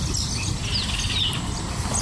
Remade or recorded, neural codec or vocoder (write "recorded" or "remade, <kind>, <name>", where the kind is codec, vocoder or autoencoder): recorded